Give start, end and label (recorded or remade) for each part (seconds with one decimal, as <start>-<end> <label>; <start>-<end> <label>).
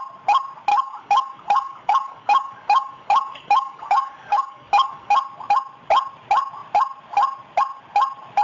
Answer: 0.0-0.7 recorded; 0.7-5.1 remade; 5.1-8.4 recorded